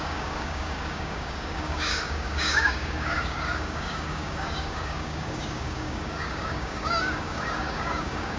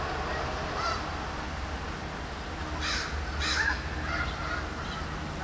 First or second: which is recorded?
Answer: second